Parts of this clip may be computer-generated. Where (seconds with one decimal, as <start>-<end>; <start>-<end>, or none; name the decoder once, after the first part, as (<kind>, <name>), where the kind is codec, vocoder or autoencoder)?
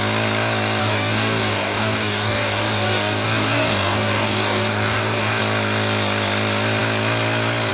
0.8-5.4 (codec, DAC)